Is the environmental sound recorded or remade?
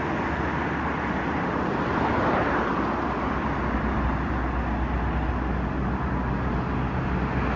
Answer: recorded